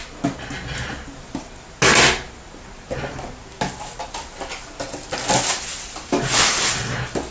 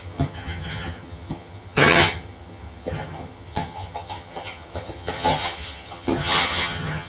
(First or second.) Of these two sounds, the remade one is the second